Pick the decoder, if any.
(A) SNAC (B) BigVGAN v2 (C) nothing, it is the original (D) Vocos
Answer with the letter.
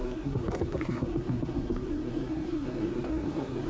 A